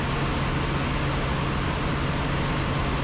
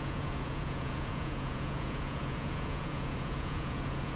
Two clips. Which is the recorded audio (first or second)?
first